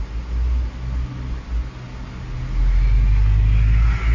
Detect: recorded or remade recorded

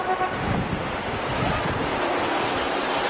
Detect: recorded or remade recorded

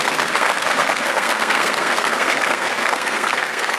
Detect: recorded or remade remade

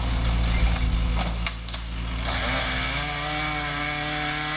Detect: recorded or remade recorded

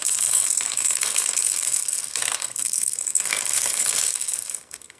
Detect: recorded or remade remade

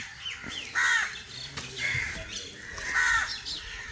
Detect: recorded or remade recorded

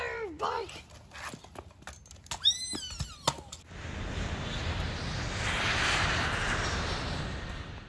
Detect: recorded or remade recorded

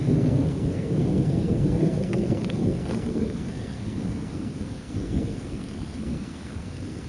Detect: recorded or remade remade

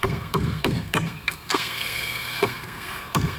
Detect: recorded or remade remade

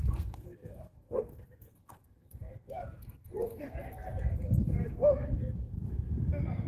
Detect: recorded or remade remade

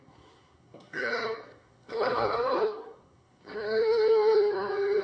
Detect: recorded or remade remade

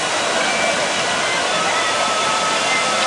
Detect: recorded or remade recorded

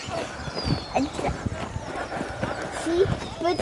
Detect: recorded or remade recorded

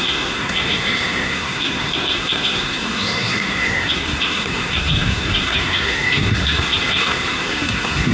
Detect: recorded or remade remade